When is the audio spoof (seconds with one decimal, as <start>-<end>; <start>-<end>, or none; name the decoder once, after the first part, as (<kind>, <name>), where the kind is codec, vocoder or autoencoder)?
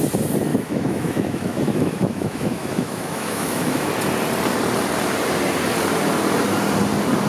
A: 0.5-3.9 (autoencoder, DAC-VAE)